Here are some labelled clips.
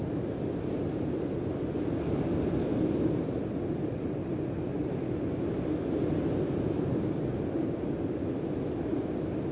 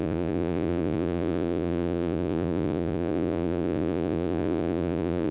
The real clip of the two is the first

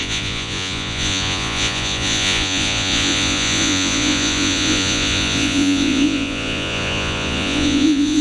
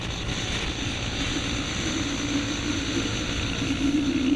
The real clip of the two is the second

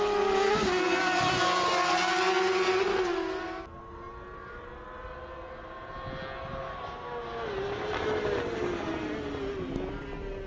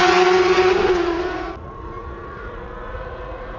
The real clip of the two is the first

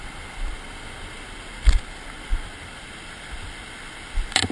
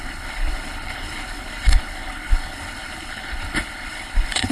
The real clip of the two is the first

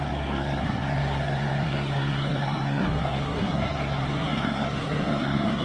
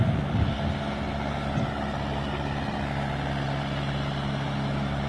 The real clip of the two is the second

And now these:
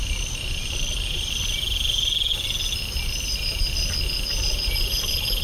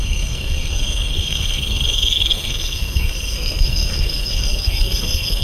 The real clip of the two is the first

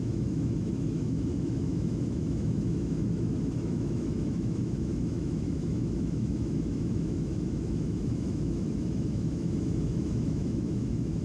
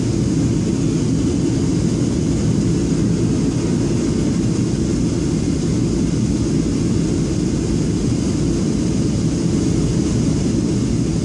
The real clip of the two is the second